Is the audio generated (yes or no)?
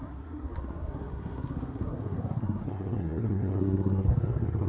yes